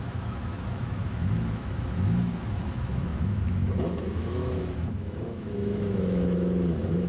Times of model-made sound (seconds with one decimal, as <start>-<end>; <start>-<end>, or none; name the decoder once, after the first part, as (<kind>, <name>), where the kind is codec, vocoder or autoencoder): 0.0-7.1 (autoencoder, DAC-VAE)